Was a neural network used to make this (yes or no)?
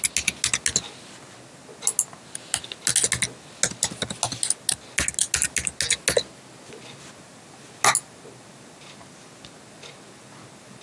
no